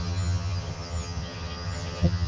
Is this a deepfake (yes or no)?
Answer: yes